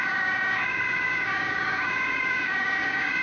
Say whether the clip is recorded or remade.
remade